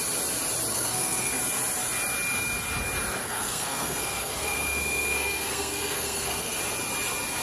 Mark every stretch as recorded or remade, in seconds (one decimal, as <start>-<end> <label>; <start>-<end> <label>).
0.0-0.7 recorded; 0.7-1.4 remade; 1.4-3.2 recorded; 3.2-6.6 remade; 6.6-7.4 recorded